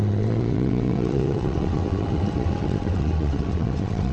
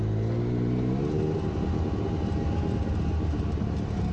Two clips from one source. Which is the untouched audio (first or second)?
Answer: second